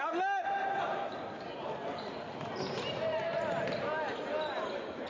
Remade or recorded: recorded